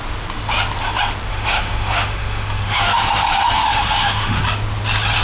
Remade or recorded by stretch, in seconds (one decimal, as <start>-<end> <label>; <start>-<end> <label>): 0.0-1.3 recorded; 1.3-4.4 remade; 4.4-5.2 recorded